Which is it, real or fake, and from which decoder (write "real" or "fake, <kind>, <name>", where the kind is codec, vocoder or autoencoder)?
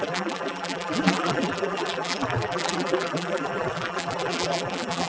fake, vocoder, BigVGAN v2